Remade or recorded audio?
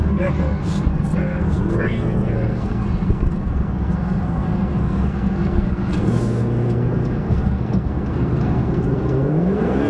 remade